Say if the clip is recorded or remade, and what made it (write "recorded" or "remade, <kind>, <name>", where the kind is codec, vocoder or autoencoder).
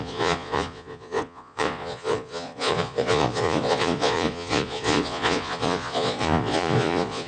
remade, vocoder, Vocos